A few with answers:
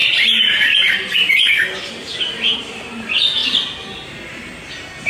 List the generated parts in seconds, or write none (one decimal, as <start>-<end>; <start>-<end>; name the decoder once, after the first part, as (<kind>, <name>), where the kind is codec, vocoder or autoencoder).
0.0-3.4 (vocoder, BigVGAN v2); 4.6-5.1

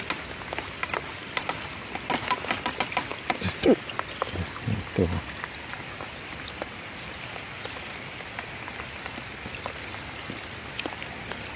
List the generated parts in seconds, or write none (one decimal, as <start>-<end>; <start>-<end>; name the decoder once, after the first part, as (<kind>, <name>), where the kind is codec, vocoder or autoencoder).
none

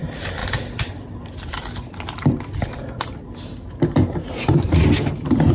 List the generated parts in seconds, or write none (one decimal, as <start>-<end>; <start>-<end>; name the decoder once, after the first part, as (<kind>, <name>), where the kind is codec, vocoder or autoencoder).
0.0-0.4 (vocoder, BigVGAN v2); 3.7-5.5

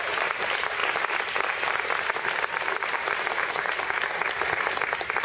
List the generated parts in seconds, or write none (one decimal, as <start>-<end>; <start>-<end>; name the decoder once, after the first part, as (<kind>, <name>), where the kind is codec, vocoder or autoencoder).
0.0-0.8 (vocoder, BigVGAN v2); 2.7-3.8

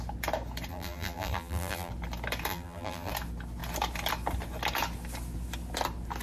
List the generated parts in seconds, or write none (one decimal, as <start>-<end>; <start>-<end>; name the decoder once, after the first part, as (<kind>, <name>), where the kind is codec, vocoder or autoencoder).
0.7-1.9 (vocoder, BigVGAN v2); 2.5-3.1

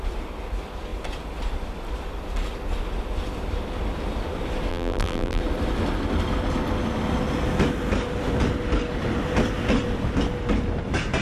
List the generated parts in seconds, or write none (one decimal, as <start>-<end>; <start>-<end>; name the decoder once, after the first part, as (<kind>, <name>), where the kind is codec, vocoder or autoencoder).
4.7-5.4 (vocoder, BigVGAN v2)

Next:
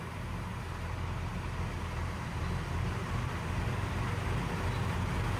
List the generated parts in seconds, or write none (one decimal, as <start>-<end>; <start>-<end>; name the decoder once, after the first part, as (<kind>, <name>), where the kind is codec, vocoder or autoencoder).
none